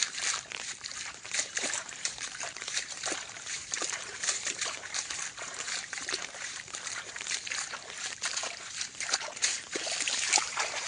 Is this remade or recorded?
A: remade